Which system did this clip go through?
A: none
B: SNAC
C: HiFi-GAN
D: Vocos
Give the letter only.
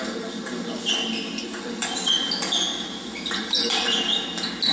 A